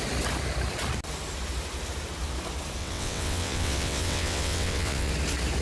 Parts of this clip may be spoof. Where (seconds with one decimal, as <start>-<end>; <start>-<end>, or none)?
2.8-5.1